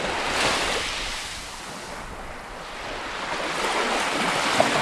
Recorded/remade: recorded